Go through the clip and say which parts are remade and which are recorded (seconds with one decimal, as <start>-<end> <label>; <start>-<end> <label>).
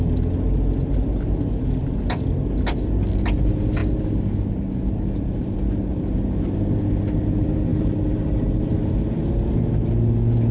0.0-7.7 recorded; 7.7-8.8 remade; 8.8-10.5 recorded